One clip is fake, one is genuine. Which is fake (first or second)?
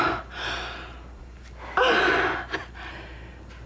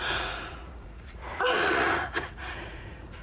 second